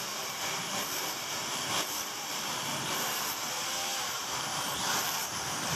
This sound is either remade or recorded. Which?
remade